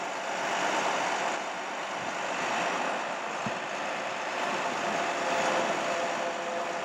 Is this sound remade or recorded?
recorded